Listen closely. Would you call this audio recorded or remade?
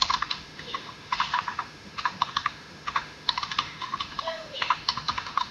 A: remade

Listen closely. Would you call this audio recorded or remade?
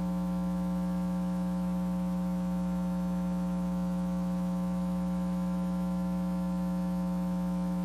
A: remade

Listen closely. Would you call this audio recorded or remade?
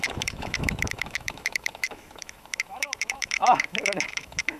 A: remade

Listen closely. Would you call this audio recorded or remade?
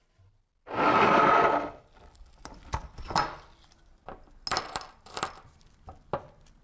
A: recorded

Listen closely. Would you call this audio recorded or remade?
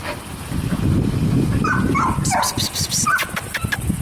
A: recorded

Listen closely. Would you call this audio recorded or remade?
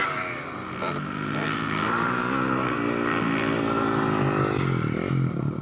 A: recorded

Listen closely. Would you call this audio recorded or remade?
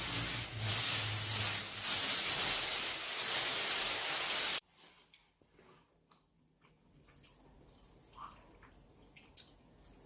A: recorded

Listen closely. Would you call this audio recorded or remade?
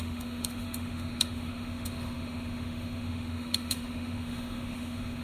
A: remade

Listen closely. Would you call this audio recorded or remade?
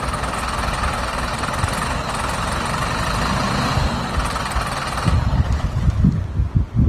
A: recorded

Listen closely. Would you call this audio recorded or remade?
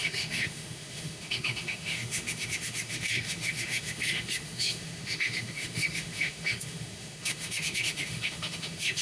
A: remade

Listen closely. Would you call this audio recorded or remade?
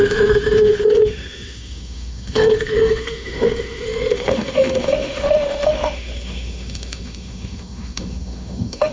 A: remade